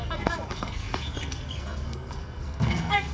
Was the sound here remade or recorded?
remade